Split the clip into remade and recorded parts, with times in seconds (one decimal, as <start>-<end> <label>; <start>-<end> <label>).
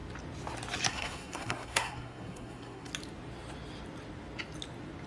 0.0-0.9 recorded; 0.9-2.9 remade; 2.9-5.1 recorded